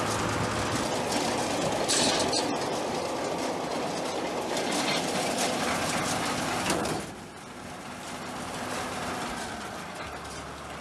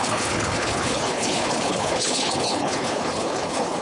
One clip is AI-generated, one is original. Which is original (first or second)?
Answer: first